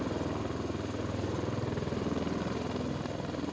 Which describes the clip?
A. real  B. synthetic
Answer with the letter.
A